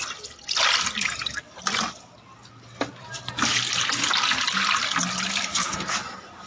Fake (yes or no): no